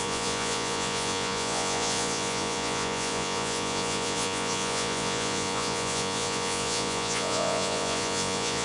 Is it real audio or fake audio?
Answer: fake